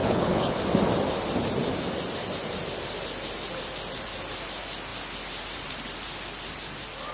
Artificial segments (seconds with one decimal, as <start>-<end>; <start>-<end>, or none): 0.0-0.6